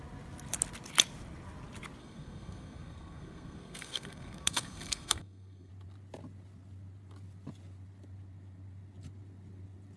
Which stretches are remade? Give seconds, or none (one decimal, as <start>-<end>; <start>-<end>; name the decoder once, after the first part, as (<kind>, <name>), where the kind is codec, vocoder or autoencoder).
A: 2.0-5.7 (codec, SNAC)